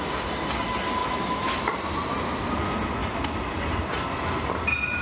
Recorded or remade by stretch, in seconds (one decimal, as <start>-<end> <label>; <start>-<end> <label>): 0.0-1.0 recorded; 1.0-1.5 remade; 1.5-5.0 recorded